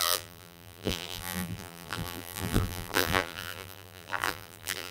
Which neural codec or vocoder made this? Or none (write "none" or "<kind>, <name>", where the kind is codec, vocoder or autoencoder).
vocoder, BigVGAN v2